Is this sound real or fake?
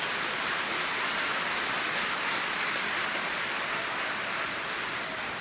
real